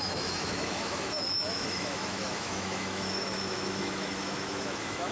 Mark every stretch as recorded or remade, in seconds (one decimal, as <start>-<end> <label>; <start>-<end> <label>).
0.0-5.1 remade